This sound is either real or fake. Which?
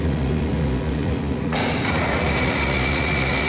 fake